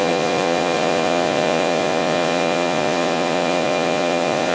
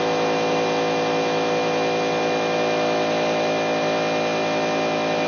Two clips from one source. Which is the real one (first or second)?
second